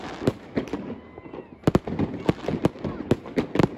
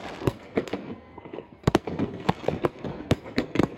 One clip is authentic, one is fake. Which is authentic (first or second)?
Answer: first